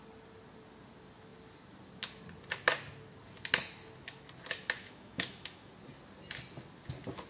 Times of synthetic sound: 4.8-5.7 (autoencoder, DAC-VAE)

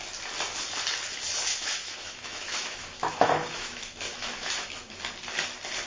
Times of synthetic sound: 1.5-5.0 (autoencoder, DAC-VAE)

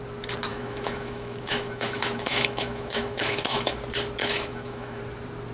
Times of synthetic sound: 0.5-3.8 (autoencoder, DAC-VAE); 4.2-5.0

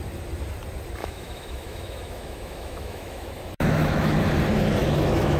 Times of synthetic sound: 1.0-4.2 (autoencoder, DAC-VAE); 4.8-5.4

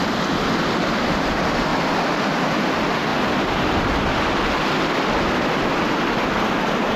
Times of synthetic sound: none